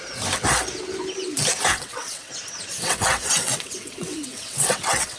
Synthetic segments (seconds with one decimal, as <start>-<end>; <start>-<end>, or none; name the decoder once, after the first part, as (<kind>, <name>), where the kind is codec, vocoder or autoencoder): 1.7-2.3 (vocoder, WaveNeXt); 2.7-5.2

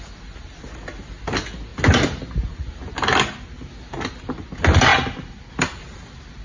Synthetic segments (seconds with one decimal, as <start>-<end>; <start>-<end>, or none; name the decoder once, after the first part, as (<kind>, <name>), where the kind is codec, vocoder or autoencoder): none